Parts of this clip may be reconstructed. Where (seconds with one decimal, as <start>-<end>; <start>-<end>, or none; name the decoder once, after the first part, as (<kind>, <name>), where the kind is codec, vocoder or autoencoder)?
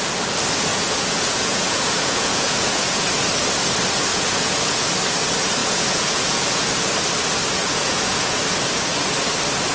0.7-3.1 (vocoder, Vocos); 4.1-4.9; 5.6-6.7; 7.6-8.4